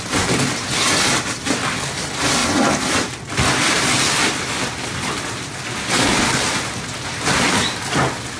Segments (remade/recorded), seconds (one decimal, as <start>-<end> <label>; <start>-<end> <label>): 0.0-8.4 recorded